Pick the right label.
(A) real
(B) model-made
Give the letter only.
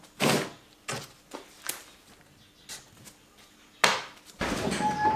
A